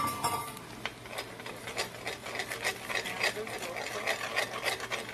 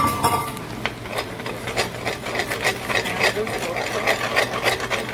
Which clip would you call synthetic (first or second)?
second